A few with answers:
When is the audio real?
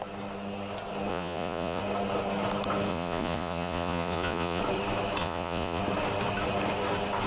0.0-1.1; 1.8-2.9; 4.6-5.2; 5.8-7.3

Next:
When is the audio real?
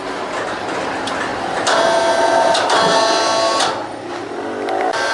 0.0-5.1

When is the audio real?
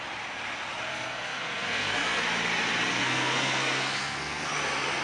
0.0-0.9; 2.2-3.0; 4.5-5.0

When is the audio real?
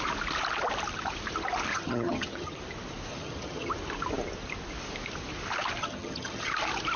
0.0-1.7; 2.6-3.1; 3.7-5.8; 6.5-7.0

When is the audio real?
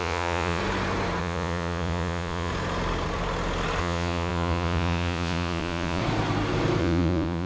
0.6-1.2; 2.5-3.8; 6.0-6.8